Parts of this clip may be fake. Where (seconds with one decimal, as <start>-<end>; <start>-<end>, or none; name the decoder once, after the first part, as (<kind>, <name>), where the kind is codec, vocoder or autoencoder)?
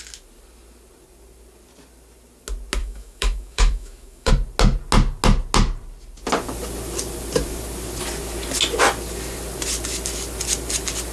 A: 2.8-4.3 (autoencoder, DAC-VAE)